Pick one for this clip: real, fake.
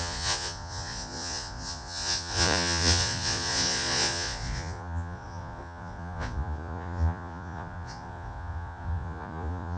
fake